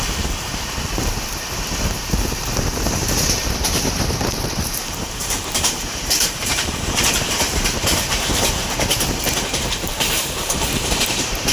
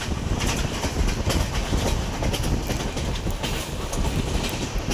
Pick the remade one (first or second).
first